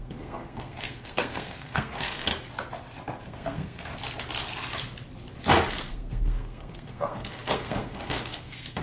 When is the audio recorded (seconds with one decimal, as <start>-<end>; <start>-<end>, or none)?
2.3-3.2; 3.9-5.7